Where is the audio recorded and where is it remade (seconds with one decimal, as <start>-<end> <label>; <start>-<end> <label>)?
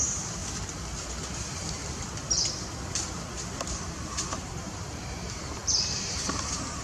0.0-0.4 remade; 0.4-1.1 recorded; 1.1-1.8 remade; 1.8-3.7 recorded; 3.7-6.8 remade